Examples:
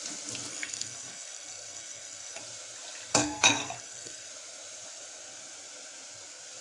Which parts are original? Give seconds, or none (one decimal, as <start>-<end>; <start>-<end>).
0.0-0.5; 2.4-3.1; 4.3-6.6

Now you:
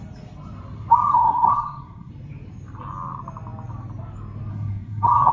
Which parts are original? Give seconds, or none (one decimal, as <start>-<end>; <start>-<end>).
0.0-1.1; 2.1-4.5

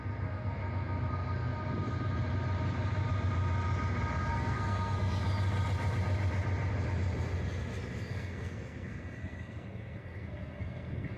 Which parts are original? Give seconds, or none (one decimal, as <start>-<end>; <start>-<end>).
0.6-1.1; 1.5-4.3; 5.2-8.1